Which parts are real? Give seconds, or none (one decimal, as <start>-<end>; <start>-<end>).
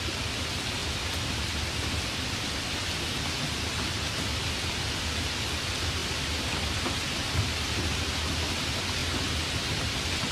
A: 0.0-0.8; 1.3-6.0; 6.8-10.3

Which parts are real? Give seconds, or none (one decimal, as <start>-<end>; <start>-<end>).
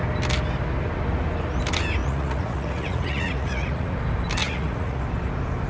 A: 0.0-2.0; 4.0-4.4; 5.0-5.7